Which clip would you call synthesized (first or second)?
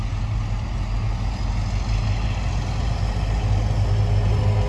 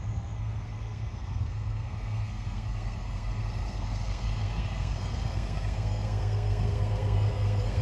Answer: second